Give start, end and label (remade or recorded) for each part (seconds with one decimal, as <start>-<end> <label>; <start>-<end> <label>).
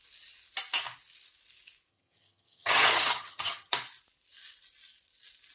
0.0-1.9 recorded; 1.9-3.7 remade; 3.7-5.5 recorded